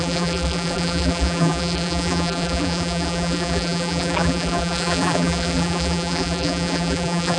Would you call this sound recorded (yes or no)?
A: no